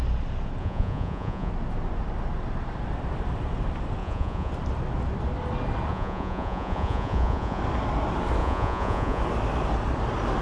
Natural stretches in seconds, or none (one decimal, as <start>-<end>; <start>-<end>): 0.0-0.6; 1.5-4.0; 4.5-5.9; 7.6-8.4; 9.2-10.4